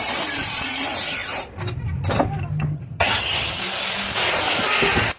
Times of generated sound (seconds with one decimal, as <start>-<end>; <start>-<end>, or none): 2.7-3.6